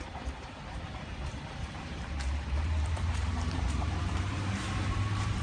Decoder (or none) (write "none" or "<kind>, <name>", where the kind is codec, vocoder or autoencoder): vocoder, BigVGAN v2